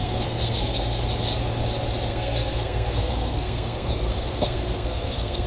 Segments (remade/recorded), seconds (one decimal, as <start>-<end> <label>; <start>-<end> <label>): 0.0-1.0 remade; 1.0-2.1 recorded; 2.1-5.5 remade